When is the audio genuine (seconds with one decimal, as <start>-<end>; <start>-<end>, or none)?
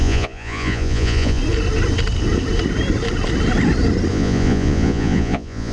1.4-4.1